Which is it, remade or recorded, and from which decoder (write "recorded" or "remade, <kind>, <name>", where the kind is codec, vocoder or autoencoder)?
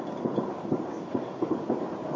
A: recorded